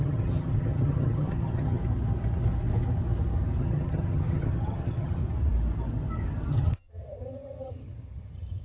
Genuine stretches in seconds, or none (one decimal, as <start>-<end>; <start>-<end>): 1.8-3.6; 5.2-6.5